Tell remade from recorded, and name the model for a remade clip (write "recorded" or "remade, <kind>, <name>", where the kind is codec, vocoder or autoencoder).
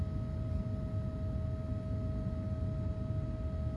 recorded